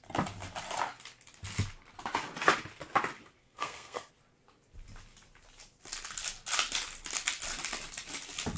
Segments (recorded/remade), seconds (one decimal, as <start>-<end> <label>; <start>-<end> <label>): 0.0-3.4 recorded; 3.4-4.1 remade; 4.1-8.6 recorded